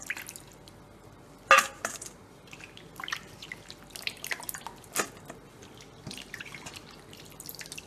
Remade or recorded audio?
recorded